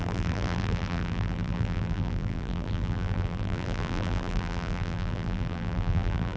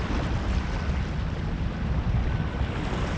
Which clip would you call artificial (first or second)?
first